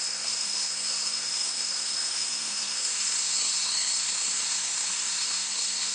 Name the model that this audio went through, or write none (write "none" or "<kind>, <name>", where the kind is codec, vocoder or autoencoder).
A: codec, SNAC